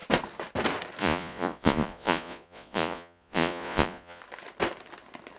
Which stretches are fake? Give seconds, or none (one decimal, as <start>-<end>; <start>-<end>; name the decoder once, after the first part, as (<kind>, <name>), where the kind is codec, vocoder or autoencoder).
1.0-4.2 (vocoder, Vocos)